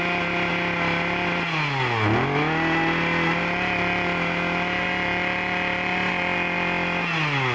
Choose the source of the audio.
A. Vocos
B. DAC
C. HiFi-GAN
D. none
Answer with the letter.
D